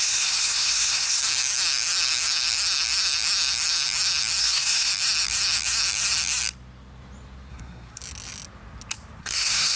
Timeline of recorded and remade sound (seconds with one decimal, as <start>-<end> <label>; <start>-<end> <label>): 0.0-1.2 remade; 1.2-4.4 recorded; 4.4-4.9 remade; 4.9-7.5 recorded; 7.5-8.0 remade; 8.0-9.2 recorded; 9.2-9.8 remade